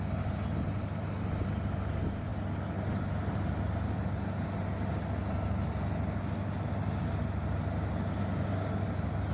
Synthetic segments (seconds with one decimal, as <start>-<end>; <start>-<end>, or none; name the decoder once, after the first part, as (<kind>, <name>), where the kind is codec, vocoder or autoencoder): none